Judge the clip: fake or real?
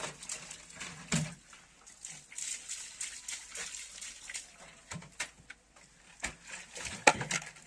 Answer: real